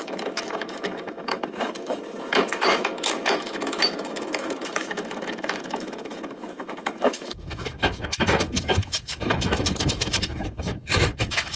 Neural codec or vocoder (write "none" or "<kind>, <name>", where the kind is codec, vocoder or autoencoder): autoencoder, DAC-VAE